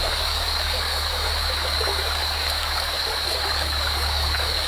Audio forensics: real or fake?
fake